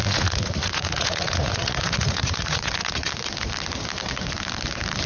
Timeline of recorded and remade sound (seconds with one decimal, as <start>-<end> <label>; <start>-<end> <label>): 0.0-3.1 remade; 3.1-5.1 recorded